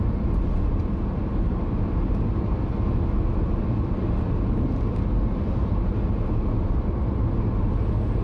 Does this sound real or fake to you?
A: real